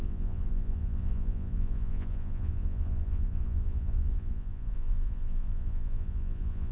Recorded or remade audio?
remade